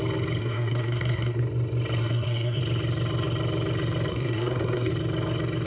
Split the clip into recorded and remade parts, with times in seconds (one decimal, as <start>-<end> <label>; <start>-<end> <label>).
0.0-0.4 recorded; 0.4-1.4 remade; 1.4-2.0 recorded; 2.0-2.6 remade; 2.6-4.1 recorded; 4.1-4.9 remade; 4.9-5.7 recorded